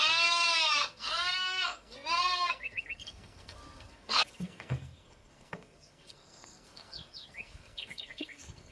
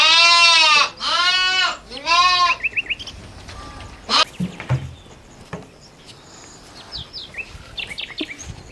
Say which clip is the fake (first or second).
first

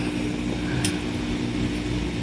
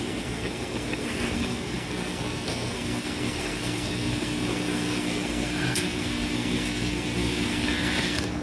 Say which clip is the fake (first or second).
second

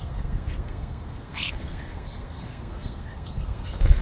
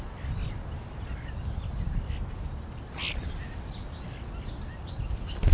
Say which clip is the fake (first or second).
first